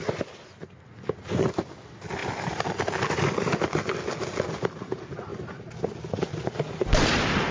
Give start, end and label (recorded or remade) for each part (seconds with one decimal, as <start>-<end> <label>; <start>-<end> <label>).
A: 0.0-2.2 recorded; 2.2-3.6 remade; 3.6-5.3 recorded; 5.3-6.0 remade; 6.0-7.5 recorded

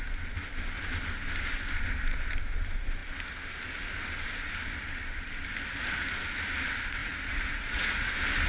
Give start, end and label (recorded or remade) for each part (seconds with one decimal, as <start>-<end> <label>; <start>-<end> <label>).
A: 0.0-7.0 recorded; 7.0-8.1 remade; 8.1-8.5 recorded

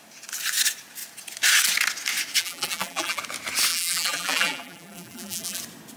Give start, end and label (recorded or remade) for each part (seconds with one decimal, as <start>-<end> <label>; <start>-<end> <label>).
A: 0.0-2.4 recorded; 2.4-3.2 remade; 3.2-3.7 recorded; 3.7-5.6 remade; 5.6-6.0 recorded

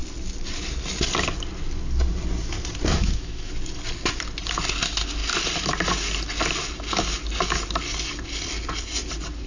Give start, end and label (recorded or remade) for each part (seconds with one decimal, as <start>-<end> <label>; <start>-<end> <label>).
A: 0.0-2.9 recorded; 2.9-3.5 remade; 3.5-9.5 recorded